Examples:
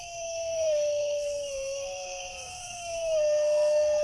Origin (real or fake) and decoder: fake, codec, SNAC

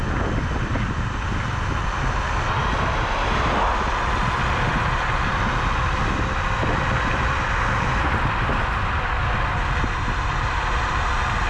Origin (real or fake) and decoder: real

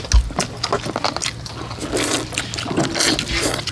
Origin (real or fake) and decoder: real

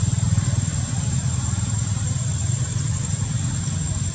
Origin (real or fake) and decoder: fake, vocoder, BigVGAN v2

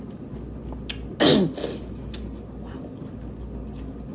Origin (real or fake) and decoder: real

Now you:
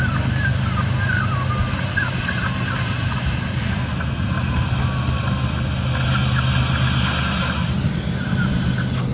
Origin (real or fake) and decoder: real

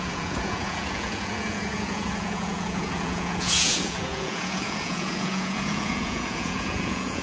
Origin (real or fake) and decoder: fake, vocoder, Vocos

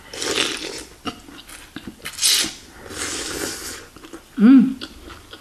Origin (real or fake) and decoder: real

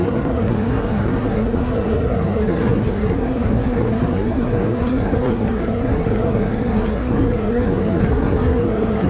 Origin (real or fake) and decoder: fake, codec, SNAC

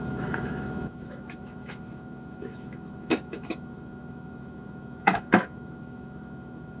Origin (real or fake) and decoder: fake, autoencoder, DAC-VAE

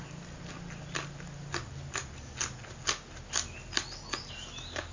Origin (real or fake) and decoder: real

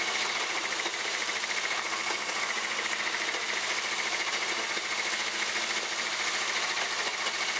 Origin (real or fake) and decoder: real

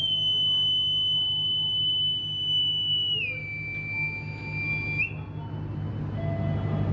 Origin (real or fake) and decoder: real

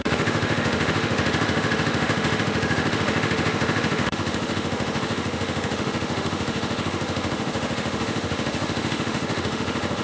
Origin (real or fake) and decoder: fake, autoencoder, DAC-VAE